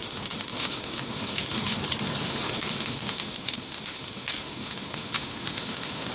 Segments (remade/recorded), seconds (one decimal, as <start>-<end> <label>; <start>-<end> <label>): 0.0-1.8 remade; 1.8-2.2 recorded; 2.2-6.1 remade